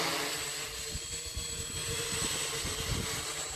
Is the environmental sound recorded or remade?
recorded